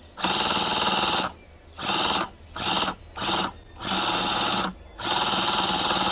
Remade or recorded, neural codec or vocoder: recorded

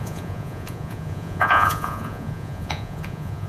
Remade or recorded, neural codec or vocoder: remade, vocoder, Vocos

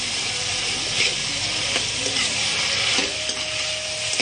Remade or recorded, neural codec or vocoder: recorded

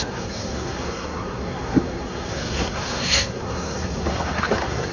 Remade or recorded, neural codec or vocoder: remade, codec, SNAC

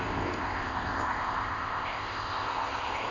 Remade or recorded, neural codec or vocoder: remade, codec, ZipCodec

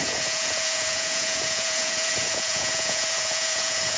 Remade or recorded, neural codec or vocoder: remade, vocoder, Vocos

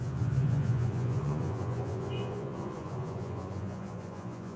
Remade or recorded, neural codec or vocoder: remade, vocoder, Vocos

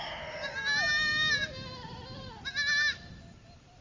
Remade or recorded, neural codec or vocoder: recorded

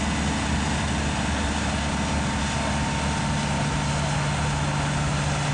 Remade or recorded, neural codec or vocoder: recorded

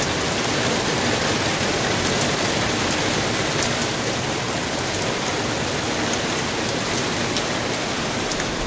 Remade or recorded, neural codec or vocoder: recorded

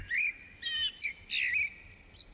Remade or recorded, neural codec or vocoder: recorded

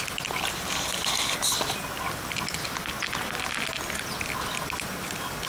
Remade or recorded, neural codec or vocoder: recorded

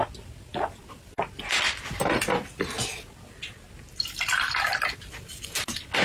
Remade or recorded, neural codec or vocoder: recorded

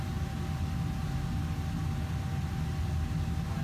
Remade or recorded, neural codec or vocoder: recorded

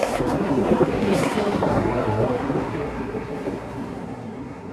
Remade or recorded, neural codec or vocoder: remade, codec, SNAC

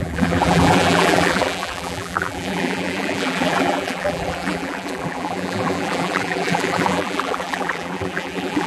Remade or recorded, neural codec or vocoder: remade, vocoder, BigVGAN v2